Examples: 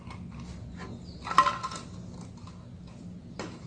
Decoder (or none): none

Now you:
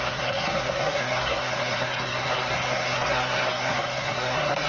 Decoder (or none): codec, SNAC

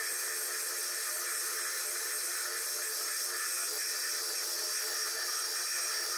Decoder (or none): none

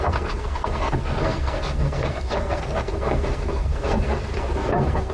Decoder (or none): codec, SNAC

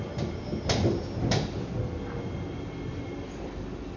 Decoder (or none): none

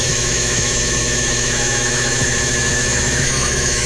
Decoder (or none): autoencoder, DAC-VAE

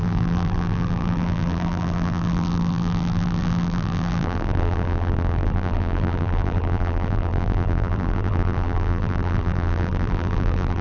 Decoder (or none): vocoder, BigVGAN v2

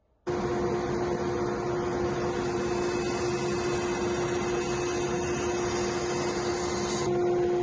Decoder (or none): none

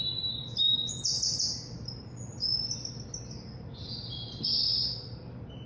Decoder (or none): none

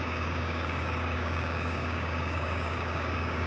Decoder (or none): codec, DAC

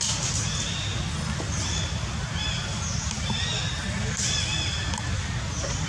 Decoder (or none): none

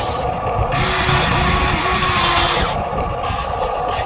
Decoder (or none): none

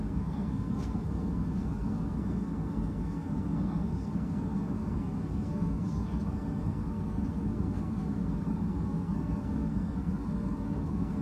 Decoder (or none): codec, SNAC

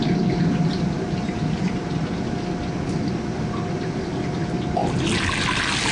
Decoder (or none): none